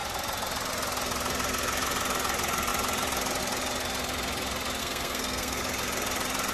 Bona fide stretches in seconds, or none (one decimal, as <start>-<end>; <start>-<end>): 0.0-4.8; 5.6-6.5